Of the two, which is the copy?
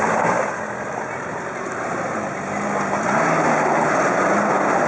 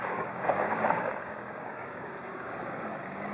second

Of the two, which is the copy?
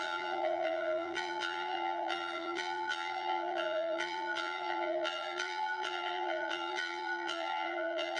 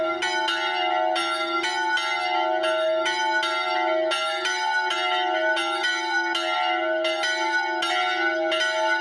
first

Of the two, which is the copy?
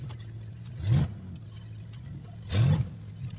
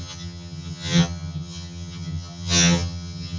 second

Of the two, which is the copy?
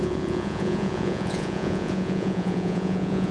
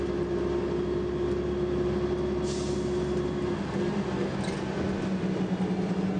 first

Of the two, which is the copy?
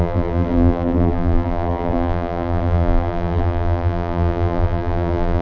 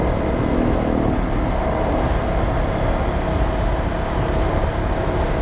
first